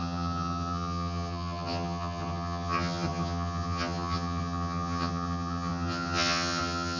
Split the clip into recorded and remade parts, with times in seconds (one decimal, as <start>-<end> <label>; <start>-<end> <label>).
0.0-7.0 remade